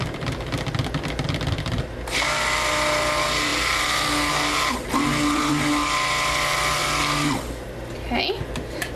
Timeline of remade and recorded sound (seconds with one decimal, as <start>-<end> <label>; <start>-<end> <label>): 0.0-9.0 recorded